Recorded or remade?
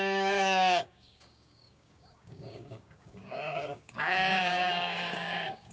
remade